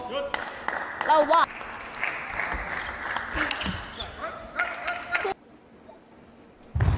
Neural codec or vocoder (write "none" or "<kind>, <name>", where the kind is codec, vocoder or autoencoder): none